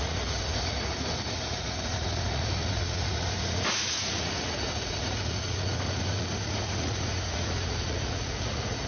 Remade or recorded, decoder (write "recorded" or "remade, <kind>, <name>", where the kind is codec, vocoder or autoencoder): remade, vocoder, Vocos